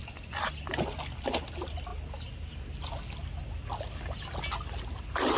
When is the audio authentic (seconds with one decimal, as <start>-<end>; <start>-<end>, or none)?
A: 0.0-5.4